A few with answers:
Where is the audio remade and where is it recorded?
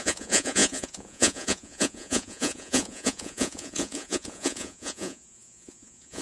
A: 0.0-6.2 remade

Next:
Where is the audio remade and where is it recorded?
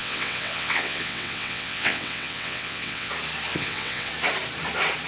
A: 0.0-3.1 remade; 3.1-3.5 recorded; 3.5-4.1 remade; 4.1-5.1 recorded